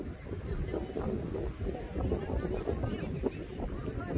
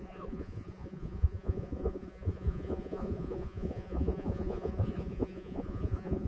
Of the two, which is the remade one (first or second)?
second